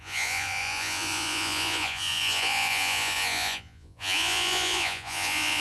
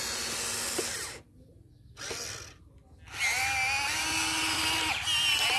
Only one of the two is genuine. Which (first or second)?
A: second